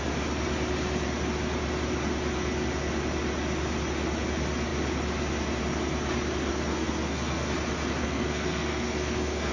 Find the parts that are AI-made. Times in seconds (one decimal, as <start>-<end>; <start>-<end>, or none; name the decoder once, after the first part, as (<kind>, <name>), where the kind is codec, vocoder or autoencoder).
6.5-7.5 (codec, SNAC); 8.0-9.5